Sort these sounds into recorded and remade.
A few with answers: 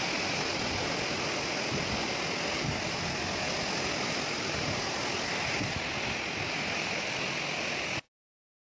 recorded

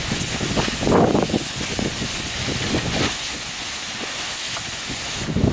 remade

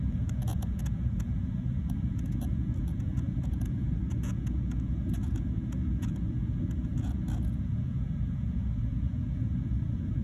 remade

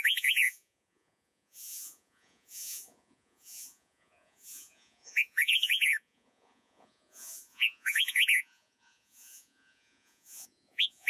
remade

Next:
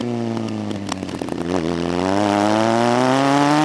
recorded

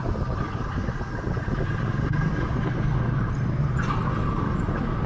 recorded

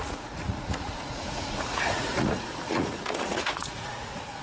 remade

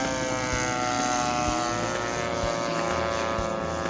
recorded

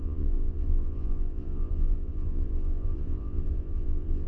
remade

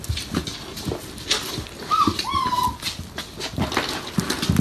recorded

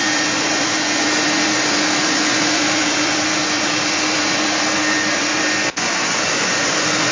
remade